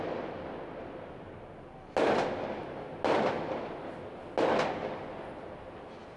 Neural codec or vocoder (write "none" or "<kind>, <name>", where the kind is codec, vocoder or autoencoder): none